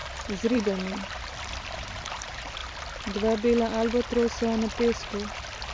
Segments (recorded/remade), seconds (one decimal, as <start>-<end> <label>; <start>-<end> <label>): 0.0-2.6 remade; 2.6-5.7 recorded